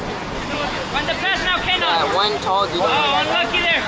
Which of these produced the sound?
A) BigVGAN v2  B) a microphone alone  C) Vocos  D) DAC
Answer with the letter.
B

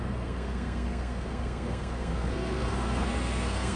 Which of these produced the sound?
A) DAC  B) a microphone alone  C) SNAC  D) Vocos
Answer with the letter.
C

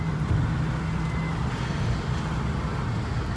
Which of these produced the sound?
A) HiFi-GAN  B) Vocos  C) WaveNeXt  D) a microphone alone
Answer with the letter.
D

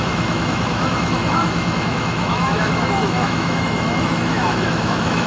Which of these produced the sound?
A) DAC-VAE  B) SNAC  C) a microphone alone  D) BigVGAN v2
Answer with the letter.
A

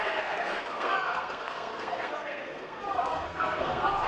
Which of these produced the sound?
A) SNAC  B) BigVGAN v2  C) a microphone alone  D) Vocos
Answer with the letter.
A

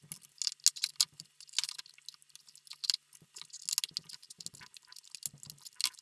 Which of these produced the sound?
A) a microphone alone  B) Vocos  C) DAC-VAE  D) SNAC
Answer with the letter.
A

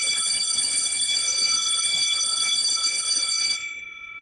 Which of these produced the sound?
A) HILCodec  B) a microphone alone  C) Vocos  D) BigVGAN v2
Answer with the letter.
A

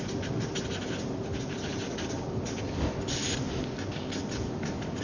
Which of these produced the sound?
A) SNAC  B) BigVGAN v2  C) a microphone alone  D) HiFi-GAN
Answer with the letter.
C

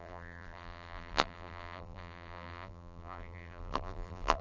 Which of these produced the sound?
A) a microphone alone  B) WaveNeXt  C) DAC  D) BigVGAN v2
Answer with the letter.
D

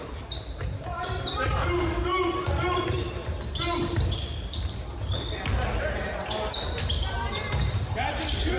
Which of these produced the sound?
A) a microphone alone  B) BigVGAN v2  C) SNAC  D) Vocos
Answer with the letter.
B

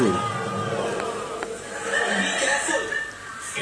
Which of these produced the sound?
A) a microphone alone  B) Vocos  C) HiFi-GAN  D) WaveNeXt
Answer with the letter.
A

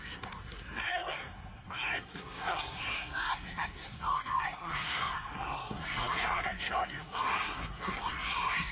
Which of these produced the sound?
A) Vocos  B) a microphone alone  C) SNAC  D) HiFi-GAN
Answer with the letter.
C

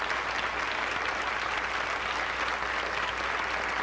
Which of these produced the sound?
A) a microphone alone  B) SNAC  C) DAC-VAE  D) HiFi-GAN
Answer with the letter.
A